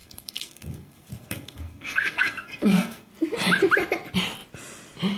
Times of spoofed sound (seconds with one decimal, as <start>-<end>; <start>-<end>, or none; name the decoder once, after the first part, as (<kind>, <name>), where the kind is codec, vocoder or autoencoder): 0.0-3.1 (codec, SNAC)